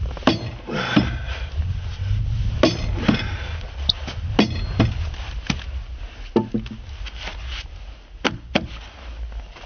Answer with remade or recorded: recorded